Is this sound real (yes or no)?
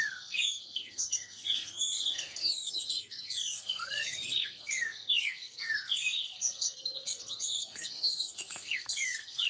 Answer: no